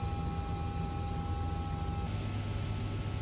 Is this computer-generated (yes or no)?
no